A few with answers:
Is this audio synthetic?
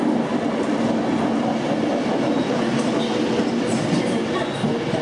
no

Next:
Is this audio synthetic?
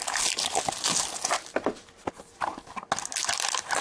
no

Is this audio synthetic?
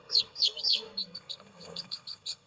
yes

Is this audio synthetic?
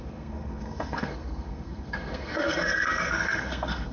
yes